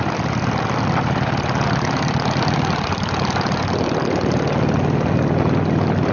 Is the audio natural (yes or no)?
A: yes